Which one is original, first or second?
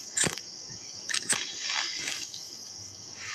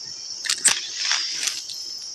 second